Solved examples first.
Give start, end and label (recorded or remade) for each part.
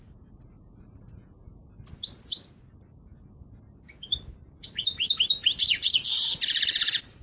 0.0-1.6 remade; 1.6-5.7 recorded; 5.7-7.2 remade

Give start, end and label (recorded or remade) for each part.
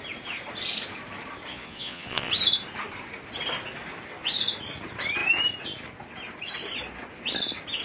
0.0-1.5 recorded; 1.5-2.3 remade; 2.3-7.8 recorded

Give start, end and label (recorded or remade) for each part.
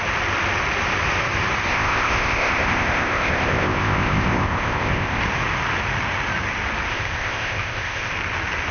0.0-1.7 recorded; 1.7-5.2 remade; 5.2-6.9 recorded; 6.9-8.1 remade; 8.1-8.7 recorded